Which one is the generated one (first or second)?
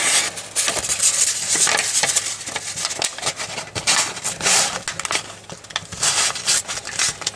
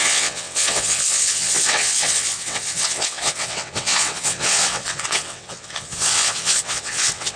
second